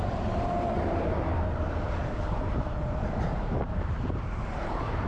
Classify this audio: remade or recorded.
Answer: remade